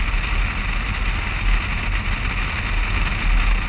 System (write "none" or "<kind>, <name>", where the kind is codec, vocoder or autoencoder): none